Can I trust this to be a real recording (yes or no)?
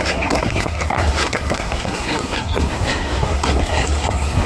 no